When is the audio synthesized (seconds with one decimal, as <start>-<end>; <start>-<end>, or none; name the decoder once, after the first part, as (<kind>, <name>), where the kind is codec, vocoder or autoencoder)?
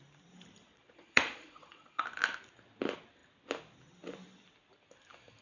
0.6-2.0 (vocoder, Vocos)